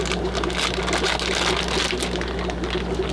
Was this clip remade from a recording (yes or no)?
no